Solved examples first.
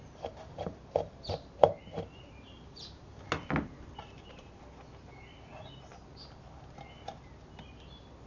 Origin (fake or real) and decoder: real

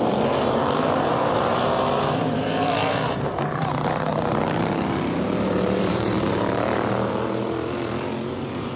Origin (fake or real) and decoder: fake, vocoder, BigVGAN v2